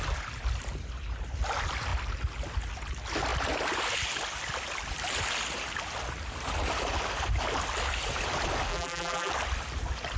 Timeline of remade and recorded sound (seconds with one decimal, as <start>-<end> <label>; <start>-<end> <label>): 0.0-8.7 recorded; 8.7-9.3 remade; 9.3-10.2 recorded